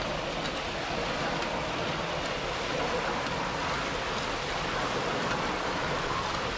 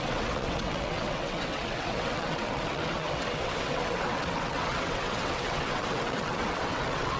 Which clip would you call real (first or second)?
first